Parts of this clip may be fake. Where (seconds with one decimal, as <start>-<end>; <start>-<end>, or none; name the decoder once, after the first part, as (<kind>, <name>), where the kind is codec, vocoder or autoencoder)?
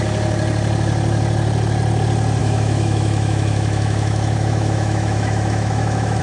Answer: 2.4-6.2 (autoencoder, DAC-VAE)